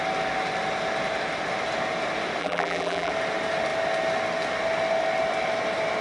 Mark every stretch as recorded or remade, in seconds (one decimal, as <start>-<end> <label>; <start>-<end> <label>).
0.0-2.4 recorded; 2.4-3.1 remade; 3.1-6.0 recorded